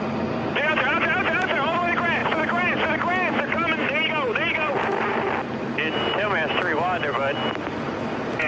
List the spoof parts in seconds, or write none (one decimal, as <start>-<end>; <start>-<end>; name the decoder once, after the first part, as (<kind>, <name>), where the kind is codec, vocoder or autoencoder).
none